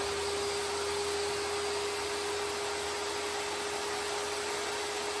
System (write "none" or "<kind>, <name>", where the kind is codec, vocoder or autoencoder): none